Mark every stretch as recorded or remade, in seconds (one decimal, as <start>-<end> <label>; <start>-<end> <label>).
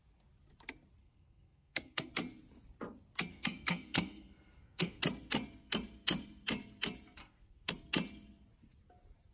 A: 0.0-1.0 recorded; 1.0-2.1 remade; 2.1-3.3 recorded; 3.3-5.0 remade; 5.0-7.2 recorded; 7.2-7.7 remade; 7.7-9.3 recorded